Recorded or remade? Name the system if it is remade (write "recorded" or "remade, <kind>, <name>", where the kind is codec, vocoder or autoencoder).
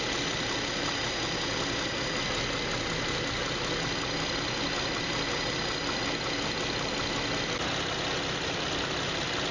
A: recorded